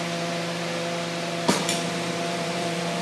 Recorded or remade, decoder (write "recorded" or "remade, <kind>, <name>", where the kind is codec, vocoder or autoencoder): remade, vocoder, BigVGAN v2